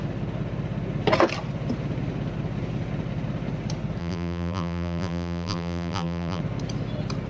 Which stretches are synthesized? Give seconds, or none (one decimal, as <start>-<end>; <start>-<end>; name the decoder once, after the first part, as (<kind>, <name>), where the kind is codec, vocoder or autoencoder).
4.0-6.4 (vocoder, BigVGAN v2)